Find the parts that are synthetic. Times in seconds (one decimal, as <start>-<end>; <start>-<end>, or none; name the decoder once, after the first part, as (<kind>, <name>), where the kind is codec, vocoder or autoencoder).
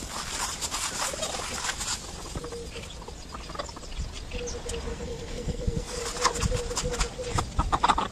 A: 4.9-6.0 (codec, SNAC)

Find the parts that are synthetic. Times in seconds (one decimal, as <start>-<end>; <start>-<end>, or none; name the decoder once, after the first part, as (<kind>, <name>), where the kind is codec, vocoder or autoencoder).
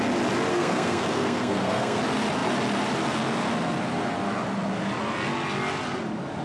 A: 0.5-2.0 (codec, SNAC)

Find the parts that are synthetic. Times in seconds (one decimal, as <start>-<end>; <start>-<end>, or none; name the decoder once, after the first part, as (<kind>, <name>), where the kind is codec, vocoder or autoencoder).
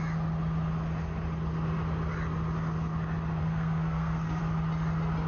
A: 3.4-4.4 (codec, SNAC)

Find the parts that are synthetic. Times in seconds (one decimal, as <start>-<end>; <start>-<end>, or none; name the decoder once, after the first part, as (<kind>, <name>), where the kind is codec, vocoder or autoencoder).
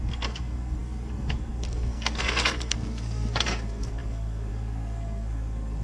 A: 0.0-5.8 (codec, SNAC)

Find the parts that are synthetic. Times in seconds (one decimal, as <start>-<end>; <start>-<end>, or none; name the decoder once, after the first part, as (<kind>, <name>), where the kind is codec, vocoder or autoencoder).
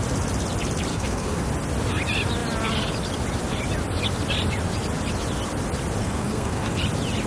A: 0.9-1.4 (codec, SNAC); 6.0-6.8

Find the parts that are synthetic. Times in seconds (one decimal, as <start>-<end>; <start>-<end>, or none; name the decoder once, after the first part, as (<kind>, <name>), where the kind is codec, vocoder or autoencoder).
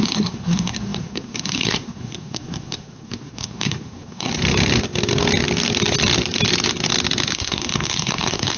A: 0.0-4.3 (codec, SNAC); 7.3-8.6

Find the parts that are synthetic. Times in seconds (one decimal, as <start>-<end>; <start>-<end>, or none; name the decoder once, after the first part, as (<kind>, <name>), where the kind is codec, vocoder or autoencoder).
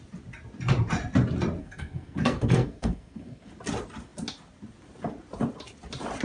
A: 1.6-3.5 (codec, SNAC)